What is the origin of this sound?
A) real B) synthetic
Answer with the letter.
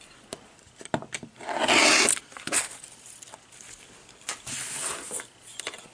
A